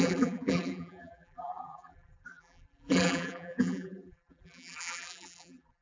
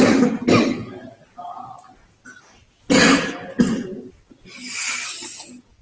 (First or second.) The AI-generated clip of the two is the first